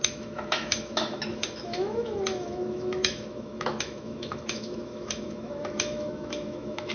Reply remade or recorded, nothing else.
remade